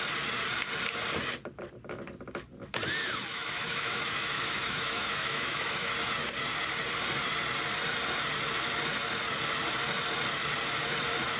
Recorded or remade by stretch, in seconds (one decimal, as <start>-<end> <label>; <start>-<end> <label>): 0.0-3.3 recorded; 3.3-5.9 remade; 5.9-11.4 recorded